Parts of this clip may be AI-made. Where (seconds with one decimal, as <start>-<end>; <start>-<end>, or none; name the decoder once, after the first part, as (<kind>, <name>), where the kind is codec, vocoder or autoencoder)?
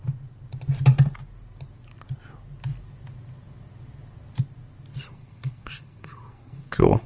4.9-7.1 (codec, SNAC)